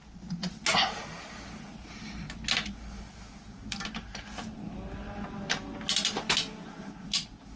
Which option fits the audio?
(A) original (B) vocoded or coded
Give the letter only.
A